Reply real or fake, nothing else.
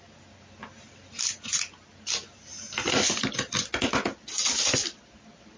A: real